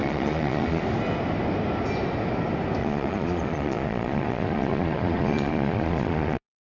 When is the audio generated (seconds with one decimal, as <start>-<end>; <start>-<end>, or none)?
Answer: 0.0-0.8; 2.8-6.6